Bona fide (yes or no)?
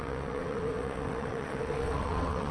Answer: no